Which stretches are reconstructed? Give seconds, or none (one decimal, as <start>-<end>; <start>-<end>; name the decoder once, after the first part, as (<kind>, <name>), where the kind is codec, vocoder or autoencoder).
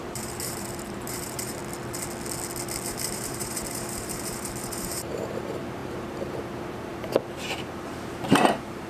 0.0-1.6 (vocoder, BigVGAN v2); 2.9-8.9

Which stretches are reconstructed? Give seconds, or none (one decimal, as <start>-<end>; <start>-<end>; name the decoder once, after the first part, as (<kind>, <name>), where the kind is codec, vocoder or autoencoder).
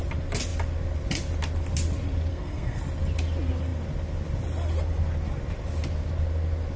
2.3-2.8 (codec, SNAC)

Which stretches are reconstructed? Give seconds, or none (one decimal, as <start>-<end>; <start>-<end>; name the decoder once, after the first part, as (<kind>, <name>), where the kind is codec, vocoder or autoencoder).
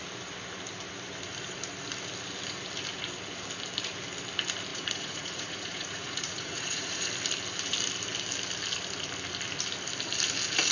4.7-7.1 (vocoder, Vocos)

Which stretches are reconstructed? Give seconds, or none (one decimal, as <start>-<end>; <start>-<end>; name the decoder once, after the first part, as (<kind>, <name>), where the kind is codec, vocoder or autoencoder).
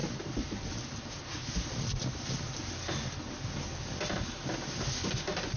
none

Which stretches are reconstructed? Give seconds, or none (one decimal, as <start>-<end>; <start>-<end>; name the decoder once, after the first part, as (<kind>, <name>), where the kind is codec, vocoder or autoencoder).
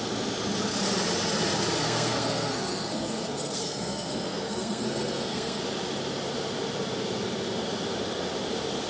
1.8-5.6 (codec, SNAC)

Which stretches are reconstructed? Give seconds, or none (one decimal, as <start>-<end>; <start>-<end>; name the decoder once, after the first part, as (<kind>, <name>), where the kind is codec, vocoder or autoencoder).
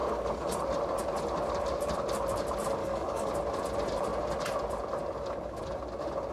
0.0-0.6 (codec, DAC); 2.8-3.3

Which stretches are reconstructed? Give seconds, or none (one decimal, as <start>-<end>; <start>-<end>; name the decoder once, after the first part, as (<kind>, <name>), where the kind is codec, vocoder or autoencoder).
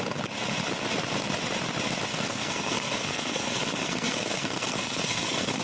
2.1-5.6 (codec, SNAC)